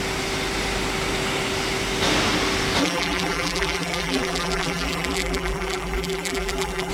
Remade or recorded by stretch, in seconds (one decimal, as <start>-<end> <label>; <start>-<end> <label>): 0.0-2.8 recorded; 2.8-6.9 remade

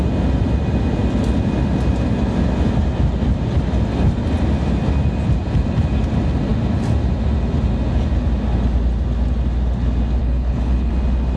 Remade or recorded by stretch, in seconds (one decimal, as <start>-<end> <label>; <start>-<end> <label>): 0.0-10.2 recorded; 10.2-10.9 remade; 10.9-11.4 recorded

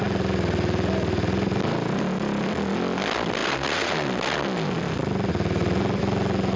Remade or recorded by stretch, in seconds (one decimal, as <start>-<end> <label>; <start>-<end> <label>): 0.0-6.6 recorded

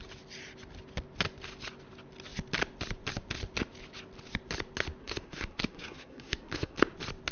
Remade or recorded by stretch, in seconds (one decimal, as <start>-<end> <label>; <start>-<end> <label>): 0.0-5.0 recorded; 5.0-6.8 remade; 6.8-7.3 recorded

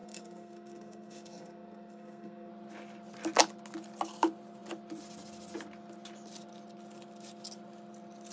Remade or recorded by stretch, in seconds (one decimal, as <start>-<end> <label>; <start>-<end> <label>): 0.0-2.5 remade; 2.5-8.3 recorded

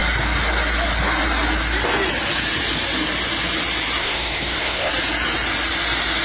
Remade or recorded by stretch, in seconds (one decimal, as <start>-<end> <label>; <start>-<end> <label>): 0.0-4.0 recorded; 4.0-4.9 remade; 4.9-6.2 recorded

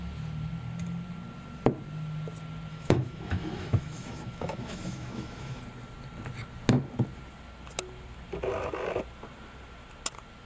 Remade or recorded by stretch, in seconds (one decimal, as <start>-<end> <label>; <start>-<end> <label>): 0.0-2.7 recorded; 2.7-5.6 remade; 5.6-10.5 recorded

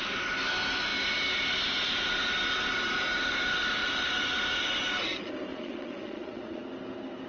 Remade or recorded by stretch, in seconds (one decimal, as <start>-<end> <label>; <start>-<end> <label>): 0.0-5.5 recorded; 5.5-6.6 remade; 6.6-7.3 recorded